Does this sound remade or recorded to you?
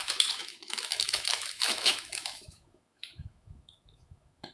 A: remade